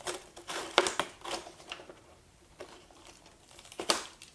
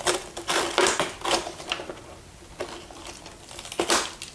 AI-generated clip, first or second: first